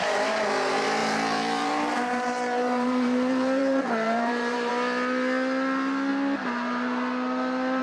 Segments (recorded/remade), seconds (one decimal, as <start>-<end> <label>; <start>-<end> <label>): 0.0-1.0 recorded; 1.0-4.7 remade; 4.7-7.8 recorded